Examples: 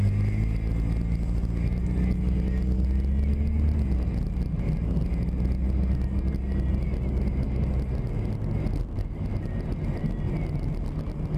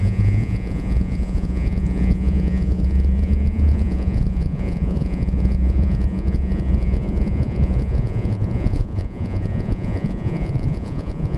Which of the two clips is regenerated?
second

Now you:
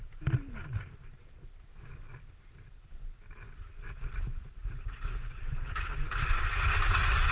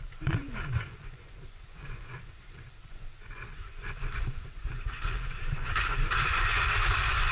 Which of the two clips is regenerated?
second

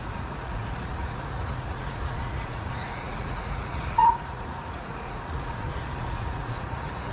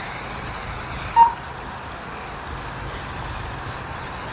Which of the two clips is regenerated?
first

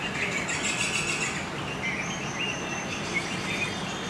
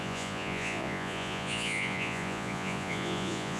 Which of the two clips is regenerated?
second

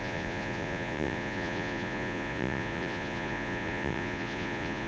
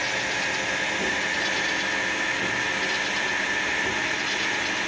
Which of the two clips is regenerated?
first